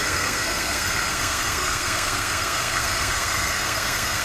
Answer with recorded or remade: remade